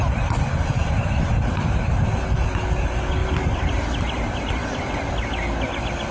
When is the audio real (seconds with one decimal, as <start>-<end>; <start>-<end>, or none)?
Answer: 0.0-0.8; 1.9-3.2; 4.4-6.1